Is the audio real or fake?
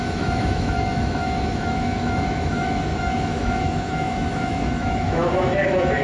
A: fake